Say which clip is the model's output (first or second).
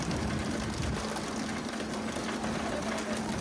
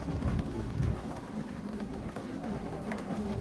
second